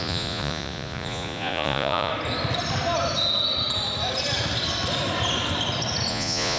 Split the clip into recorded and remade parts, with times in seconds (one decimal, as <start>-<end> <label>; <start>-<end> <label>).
0.0-2.1 remade; 2.1-6.1 recorded; 6.1-6.6 remade